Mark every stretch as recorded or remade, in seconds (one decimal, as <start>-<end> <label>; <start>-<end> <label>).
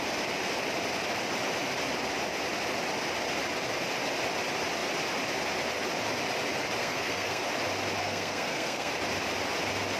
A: 0.0-6.8 recorded; 6.8-7.4 remade; 7.4-8.0 recorded; 8.0-8.9 remade; 8.9-10.0 recorded